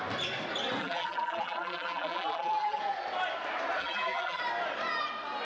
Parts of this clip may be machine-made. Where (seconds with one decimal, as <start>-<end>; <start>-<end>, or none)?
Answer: 0.8-2.8; 3.8-4.4